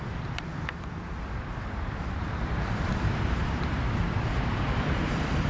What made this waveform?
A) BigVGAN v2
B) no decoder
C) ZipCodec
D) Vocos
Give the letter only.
A